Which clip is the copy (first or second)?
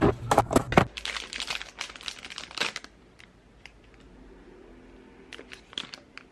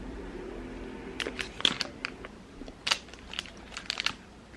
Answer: second